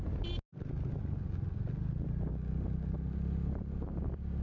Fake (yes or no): no